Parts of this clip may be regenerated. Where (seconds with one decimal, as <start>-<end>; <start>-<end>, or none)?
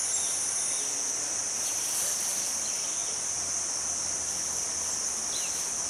3.0-4.7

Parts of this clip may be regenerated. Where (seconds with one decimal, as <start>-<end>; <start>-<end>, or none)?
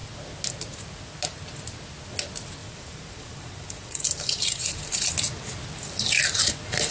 2.6-5.1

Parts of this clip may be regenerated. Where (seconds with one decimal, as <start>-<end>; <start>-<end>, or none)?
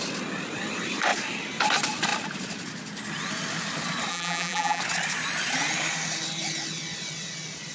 4.1-4.8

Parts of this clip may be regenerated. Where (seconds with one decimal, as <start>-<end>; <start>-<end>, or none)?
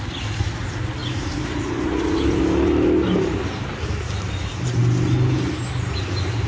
1.0-2.4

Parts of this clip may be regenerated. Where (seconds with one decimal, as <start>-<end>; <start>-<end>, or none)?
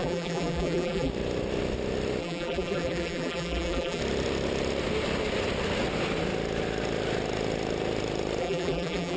0.0-1.1; 2.2-4.0; 8.4-9.2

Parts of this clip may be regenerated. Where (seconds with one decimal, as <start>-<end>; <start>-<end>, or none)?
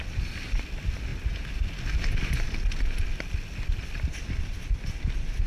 none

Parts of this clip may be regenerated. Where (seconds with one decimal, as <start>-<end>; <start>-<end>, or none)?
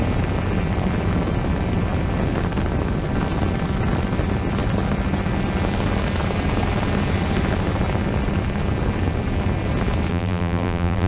10.1-11.1